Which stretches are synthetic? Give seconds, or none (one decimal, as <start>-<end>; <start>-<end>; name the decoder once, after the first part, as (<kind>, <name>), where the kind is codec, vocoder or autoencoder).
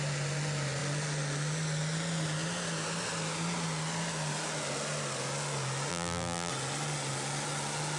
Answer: 5.9-6.5 (vocoder, BigVGAN v2)